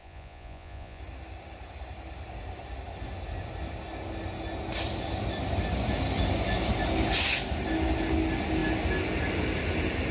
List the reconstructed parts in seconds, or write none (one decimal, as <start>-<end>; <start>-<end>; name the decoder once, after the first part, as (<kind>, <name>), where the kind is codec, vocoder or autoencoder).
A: 0.0-1.0 (vocoder, Vocos)